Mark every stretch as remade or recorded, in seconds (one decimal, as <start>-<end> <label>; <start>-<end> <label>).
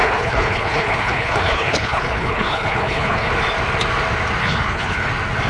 0.0-3.3 remade; 3.3-4.4 recorded; 4.4-5.1 remade; 5.1-5.5 recorded